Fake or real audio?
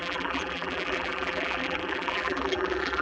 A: fake